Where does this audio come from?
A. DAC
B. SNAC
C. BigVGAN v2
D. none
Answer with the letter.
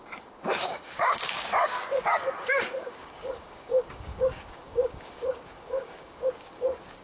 A